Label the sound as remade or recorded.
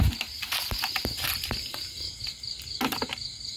recorded